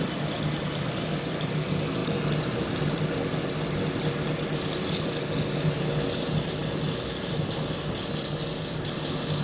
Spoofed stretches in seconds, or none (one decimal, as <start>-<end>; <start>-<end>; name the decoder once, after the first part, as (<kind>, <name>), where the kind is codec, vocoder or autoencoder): none